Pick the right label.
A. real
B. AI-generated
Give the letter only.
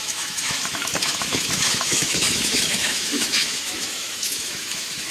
B